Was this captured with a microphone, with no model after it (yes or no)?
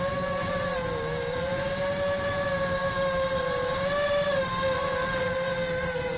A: yes